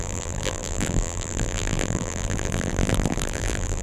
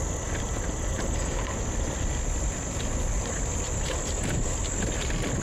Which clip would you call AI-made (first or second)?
first